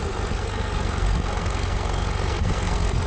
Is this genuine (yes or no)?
no